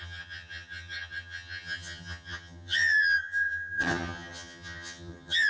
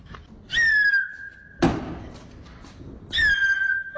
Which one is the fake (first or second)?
first